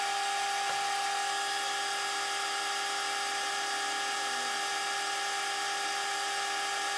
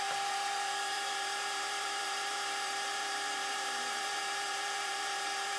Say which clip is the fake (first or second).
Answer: second